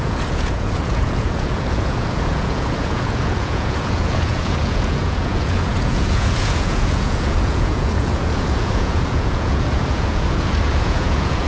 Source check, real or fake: fake